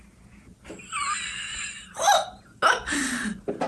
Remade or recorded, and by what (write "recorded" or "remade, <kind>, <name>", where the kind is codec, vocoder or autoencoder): recorded